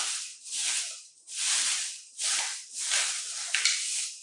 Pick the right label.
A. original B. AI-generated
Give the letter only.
B